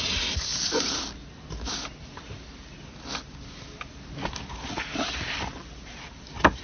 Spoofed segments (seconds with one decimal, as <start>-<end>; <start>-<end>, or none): none